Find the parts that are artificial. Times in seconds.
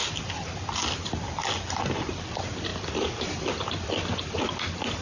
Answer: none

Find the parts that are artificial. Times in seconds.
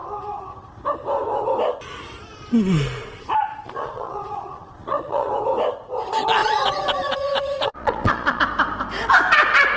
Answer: 3.5-5.3 (vocoder, Vocos); 6.4-8.4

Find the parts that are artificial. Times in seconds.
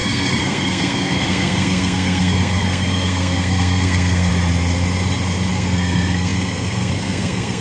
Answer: 0.0-4.3 (codec, SNAC); 5.5-7.6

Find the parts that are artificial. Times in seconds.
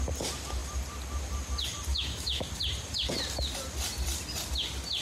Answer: 1.9-2.4 (autoencoder, DAC-VAE)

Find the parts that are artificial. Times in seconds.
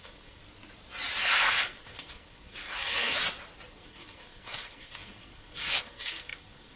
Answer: 0.0-0.4 (codec, SNAC); 1.2-3.2; 3.7-6.8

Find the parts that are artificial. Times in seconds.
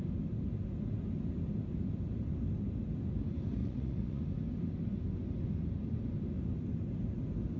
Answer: 3.6-4.2 (vocoder, Vocos)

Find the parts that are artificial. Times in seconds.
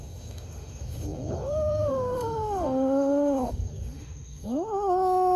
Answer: 0.0-5.4 (autoencoder, DAC-VAE)